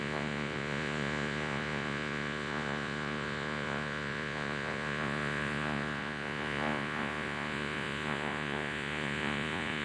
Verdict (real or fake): fake